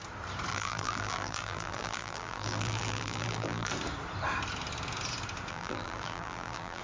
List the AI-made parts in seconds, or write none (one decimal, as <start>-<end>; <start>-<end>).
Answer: 0.5-3.7; 5.5-6.8